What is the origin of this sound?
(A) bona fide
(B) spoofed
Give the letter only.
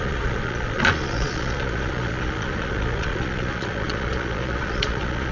B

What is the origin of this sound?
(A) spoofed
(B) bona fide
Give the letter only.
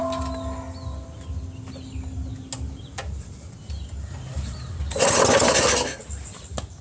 B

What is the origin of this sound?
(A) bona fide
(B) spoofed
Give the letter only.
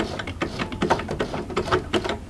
A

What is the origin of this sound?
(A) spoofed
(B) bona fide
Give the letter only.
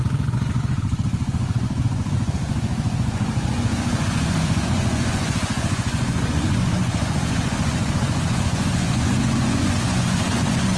A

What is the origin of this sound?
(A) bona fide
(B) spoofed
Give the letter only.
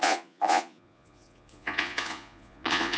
B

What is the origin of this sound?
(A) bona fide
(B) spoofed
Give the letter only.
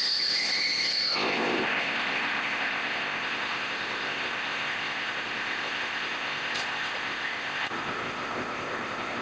B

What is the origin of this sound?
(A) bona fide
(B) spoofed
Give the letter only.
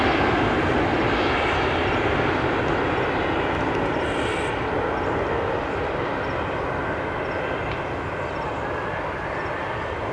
A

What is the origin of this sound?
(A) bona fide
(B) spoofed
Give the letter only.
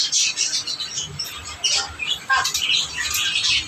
A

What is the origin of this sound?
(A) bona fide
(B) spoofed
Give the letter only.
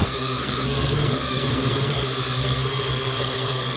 B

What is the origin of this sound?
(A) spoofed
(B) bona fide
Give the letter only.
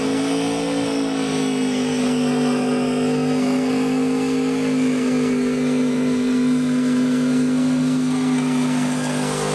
A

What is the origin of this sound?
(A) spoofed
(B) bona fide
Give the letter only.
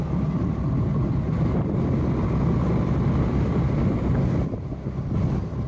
B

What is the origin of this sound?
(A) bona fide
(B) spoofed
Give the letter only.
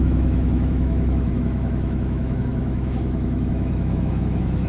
B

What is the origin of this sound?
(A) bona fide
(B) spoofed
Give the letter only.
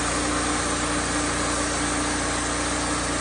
A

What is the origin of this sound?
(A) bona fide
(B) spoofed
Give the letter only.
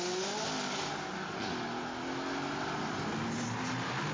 A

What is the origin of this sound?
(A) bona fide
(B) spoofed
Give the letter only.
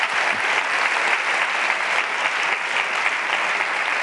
A